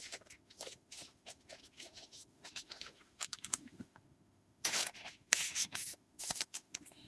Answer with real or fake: fake